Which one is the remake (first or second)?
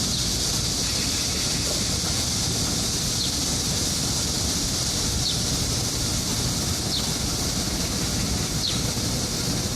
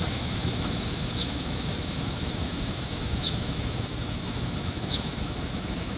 second